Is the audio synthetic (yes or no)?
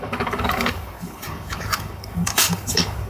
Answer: yes